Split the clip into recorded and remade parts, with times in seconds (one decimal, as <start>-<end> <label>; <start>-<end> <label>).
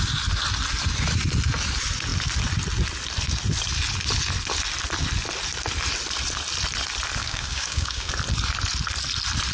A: 0.0-7.2 recorded; 7.2-8.1 remade; 8.1-9.5 recorded